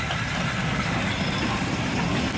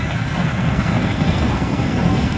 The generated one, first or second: second